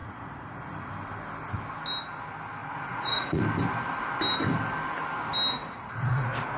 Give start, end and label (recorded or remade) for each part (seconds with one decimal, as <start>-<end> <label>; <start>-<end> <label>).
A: 0.0-0.9 remade; 0.9-2.6 recorded; 2.6-3.4 remade; 3.4-5.6 recorded; 5.6-6.6 remade